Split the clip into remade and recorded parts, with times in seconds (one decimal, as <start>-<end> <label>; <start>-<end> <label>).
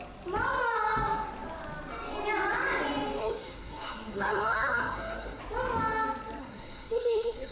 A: 0.0-3.2 recorded; 3.2-5.4 remade; 5.4-6.4 recorded; 6.4-7.5 remade